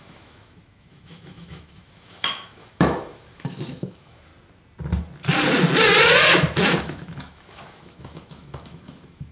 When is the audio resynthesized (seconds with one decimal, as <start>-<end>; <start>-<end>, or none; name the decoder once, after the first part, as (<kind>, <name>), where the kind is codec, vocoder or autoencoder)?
0.0-4.3 (autoencoder, DAC-VAE); 6.8-9.3